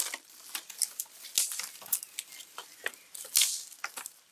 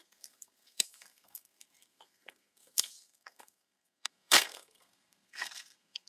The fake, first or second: second